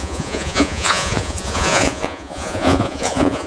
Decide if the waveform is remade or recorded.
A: remade